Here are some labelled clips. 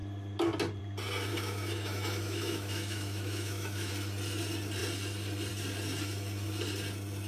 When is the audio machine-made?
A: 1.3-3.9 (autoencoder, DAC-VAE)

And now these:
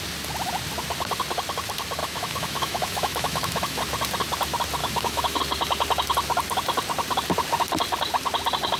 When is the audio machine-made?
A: 2.0-3.8 (autoencoder, DAC-VAE); 4.8-5.4

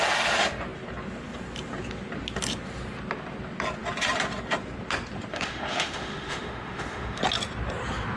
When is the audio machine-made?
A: 5.3-7.2 (autoencoder, DAC-VAE)

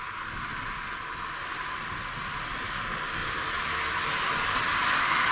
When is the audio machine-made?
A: none